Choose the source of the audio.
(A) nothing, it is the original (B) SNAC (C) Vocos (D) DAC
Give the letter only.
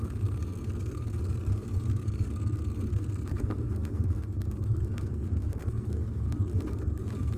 B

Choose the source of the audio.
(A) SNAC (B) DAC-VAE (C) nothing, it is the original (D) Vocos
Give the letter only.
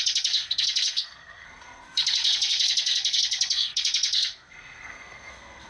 A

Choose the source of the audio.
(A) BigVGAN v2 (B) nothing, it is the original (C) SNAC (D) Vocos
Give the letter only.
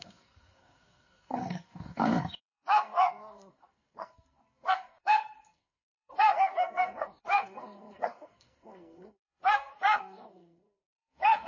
C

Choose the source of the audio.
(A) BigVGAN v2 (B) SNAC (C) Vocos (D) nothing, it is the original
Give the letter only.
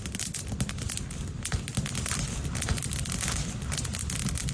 D